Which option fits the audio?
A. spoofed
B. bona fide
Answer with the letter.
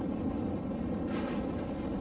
B